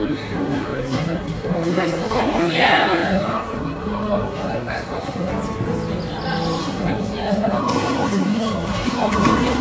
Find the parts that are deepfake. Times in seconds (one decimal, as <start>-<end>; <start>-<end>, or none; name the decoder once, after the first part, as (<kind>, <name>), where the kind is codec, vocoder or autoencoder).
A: 0.0-5.3 (codec, SNAC); 6.6-9.6